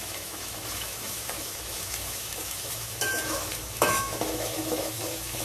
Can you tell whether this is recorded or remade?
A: remade